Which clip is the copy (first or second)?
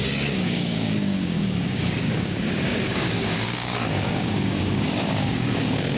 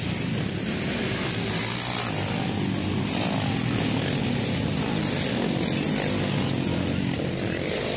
first